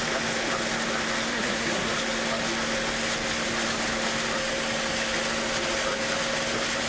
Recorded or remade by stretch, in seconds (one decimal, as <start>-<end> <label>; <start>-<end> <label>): 0.0-1.3 recorded; 1.3-1.9 remade; 1.9-6.9 recorded